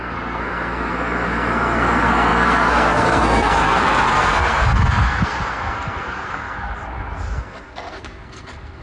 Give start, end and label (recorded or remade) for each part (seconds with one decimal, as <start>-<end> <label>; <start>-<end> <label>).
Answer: 0.0-8.8 remade